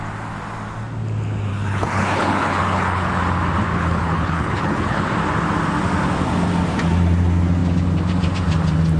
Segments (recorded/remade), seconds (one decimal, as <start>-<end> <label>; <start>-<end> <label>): 0.0-1.5 recorded; 1.5-3.2 remade; 3.2-3.7 recorded; 3.7-5.0 remade; 5.0-9.0 recorded